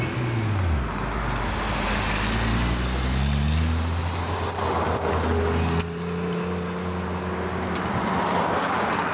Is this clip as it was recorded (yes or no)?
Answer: yes